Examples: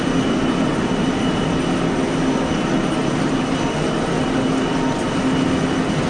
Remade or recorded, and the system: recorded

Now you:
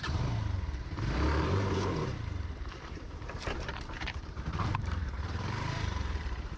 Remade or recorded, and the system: remade, vocoder, BigVGAN v2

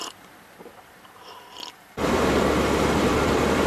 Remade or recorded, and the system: remade, vocoder, BigVGAN v2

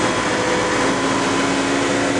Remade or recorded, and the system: recorded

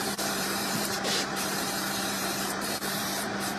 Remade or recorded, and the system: remade, vocoder, BigVGAN v2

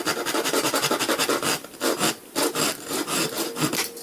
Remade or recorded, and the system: recorded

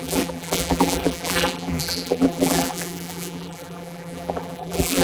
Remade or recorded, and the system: remade, vocoder, BigVGAN v2